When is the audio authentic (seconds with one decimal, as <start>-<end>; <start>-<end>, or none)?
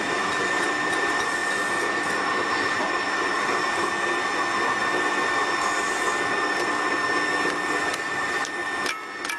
1.4-2.2; 3.6-7.9; 8.6-9.4